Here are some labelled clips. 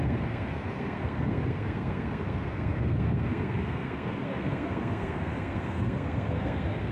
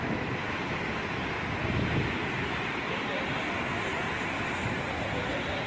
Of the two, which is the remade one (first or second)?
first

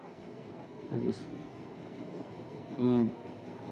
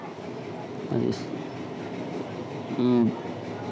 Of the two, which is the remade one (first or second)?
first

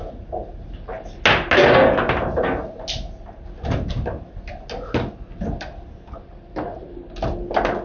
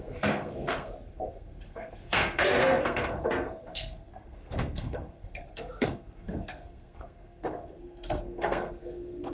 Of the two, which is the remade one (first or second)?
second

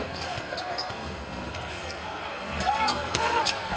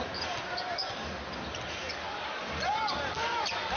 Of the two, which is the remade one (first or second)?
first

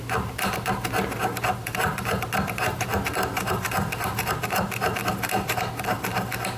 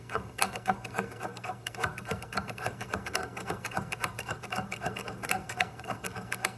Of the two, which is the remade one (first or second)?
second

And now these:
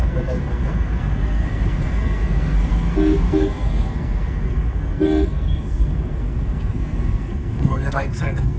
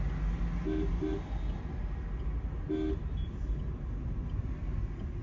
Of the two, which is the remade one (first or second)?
first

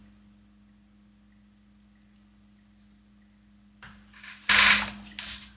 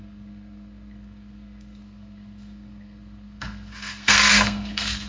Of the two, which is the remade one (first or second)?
second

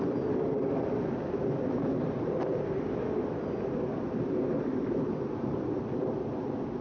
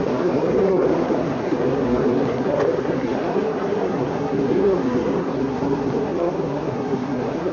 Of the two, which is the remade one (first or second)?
second